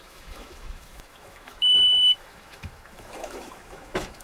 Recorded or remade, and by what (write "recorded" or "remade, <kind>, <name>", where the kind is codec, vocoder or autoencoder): remade, autoencoder, DAC-VAE